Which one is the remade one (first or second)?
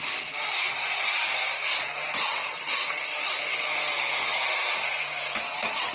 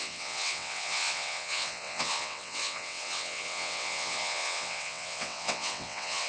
second